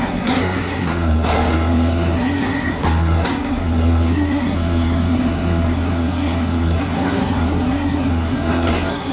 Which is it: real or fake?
fake